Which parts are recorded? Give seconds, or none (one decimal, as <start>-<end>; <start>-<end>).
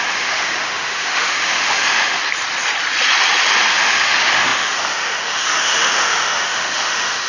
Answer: 2.2-3.7